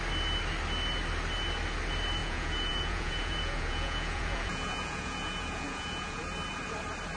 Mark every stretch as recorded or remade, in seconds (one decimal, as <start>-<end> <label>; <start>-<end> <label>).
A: 0.0-2.2 recorded; 2.2-6.2 remade; 6.2-7.2 recorded